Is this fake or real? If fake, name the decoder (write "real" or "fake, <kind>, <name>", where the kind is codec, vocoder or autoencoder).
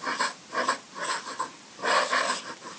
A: real